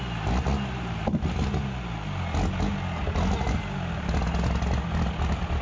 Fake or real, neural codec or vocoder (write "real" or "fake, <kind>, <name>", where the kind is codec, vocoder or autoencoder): real